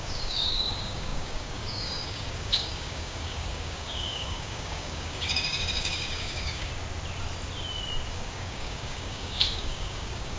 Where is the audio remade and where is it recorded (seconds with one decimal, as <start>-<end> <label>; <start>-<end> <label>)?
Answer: 0.0-6.7 remade; 6.7-8.1 recorded; 8.1-10.4 remade